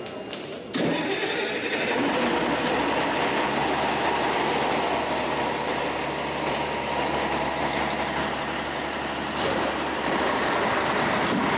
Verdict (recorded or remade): recorded